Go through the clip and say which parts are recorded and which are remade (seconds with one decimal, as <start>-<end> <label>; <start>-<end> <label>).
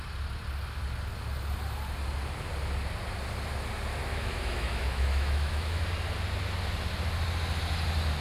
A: 0.0-4.0 recorded; 4.0-5.8 remade; 5.8-8.2 recorded